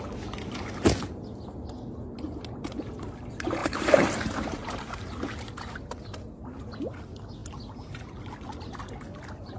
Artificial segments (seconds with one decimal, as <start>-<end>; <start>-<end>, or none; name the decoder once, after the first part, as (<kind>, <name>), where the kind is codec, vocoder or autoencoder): 3.6-5.1 (vocoder, BigVGAN v2)